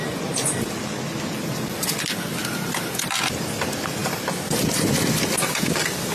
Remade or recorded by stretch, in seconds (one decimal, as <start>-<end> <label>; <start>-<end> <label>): 0.0-2.4 recorded; 2.4-3.0 remade; 3.0-6.1 recorded